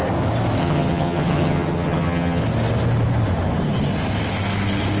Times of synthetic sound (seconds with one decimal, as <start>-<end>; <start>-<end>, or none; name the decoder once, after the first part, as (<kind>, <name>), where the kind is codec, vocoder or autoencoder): 0.6-2.4 (vocoder, HiFi-GAN)

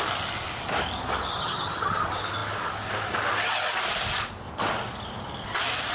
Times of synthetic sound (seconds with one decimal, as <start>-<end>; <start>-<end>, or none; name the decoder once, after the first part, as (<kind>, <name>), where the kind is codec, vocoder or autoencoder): 1.4-2.0 (vocoder, HiFi-GAN)

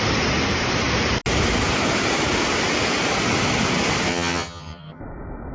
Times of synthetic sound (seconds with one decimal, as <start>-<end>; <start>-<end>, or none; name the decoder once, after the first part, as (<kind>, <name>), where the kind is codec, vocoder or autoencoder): 4.1-5.0 (vocoder, HiFi-GAN)